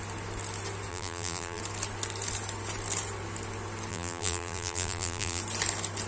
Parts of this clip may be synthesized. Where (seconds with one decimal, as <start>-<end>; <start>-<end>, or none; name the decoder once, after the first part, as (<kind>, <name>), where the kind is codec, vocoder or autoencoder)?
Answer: 0.9-1.6 (vocoder, BigVGAN v2); 3.9-5.4